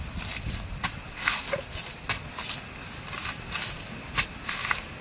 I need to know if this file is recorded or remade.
recorded